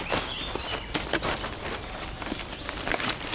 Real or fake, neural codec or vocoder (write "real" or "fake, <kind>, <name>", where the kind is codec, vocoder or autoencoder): real